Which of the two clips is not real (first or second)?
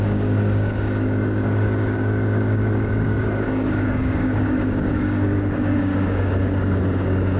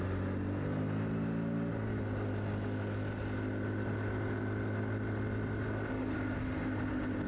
first